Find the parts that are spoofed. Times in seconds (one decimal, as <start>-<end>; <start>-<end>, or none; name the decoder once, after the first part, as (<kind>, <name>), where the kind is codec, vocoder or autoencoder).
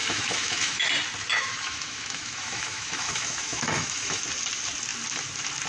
0.0-0.9 (autoencoder, DAC-VAE); 1.3-4.2